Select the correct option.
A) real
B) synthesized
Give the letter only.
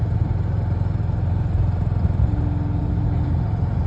A